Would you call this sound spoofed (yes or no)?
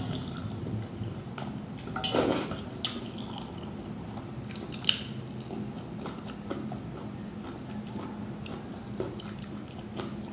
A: no